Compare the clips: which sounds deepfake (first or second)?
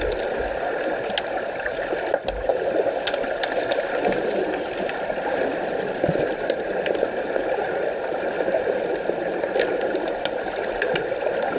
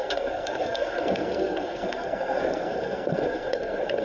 second